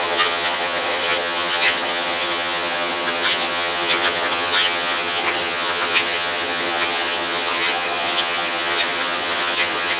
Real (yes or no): no